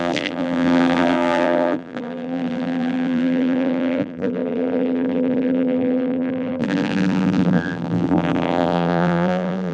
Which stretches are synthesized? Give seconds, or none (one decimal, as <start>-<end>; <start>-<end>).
0.0-9.7

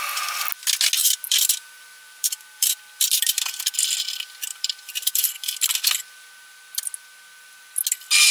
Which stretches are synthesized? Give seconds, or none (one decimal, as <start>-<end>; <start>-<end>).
1.0-3.4; 4.5-5.6

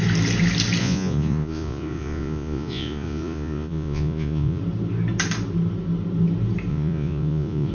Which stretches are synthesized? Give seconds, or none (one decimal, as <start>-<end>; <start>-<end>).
0.8-4.6; 6.7-7.7

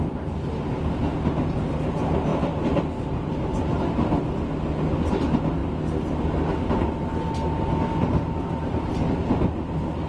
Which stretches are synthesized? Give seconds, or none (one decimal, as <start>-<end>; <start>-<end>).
none

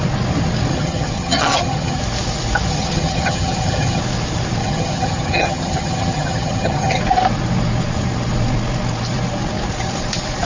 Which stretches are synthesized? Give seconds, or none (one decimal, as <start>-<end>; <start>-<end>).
0.7-2.0; 2.7-4.0; 4.6-7.0